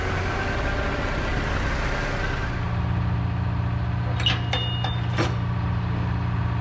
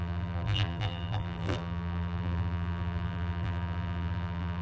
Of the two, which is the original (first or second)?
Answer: first